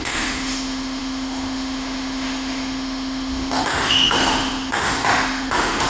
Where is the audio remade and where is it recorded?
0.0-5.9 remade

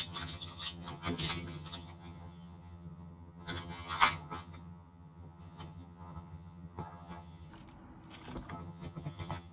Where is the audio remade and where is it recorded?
0.0-7.5 remade; 7.5-8.5 recorded; 8.5-9.5 remade

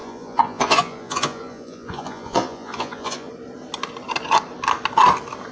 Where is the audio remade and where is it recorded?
0.0-3.3 remade; 3.3-5.5 recorded

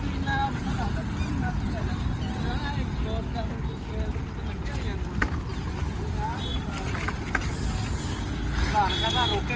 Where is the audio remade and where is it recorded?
0.0-5.5 recorded; 5.5-6.0 remade; 6.0-9.6 recorded

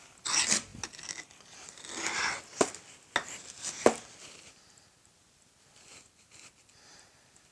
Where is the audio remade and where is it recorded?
0.0-7.5 recorded